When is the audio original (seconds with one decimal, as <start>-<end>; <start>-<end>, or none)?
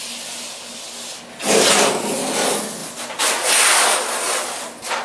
0.0-5.0